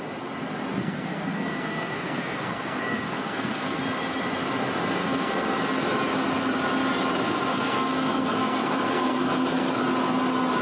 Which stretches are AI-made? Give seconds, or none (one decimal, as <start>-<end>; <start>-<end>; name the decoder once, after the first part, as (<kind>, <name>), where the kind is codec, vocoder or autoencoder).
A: 0.8-3.8 (codec, SNAC); 5.0-5.6; 7.5-9.8